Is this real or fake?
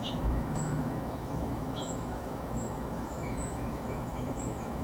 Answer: fake